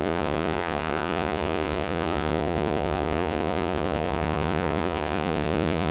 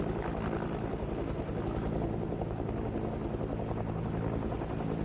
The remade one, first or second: first